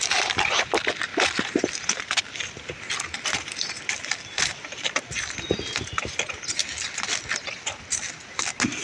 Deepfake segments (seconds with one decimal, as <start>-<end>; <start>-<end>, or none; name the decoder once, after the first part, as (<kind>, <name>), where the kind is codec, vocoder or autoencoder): none